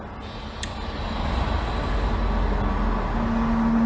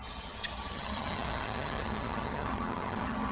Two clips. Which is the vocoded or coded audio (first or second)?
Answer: second